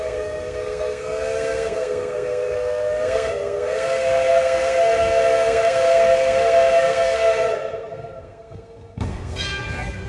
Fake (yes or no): yes